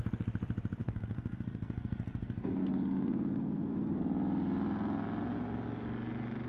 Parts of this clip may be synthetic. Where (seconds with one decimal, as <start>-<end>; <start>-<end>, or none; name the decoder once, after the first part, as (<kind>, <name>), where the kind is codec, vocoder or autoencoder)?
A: 0.8-4.0 (codec, SNAC)

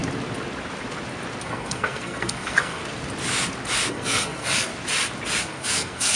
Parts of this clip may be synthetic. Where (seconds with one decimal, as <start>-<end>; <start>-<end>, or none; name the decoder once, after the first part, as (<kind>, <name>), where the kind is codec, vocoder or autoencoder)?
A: 1.4-2.8 (codec, SNAC); 3.9-4.7; 5.4-6.2